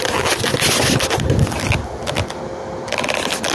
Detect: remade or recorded recorded